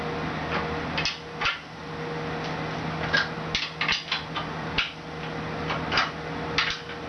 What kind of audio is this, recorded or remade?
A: recorded